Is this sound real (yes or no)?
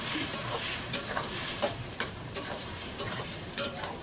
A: no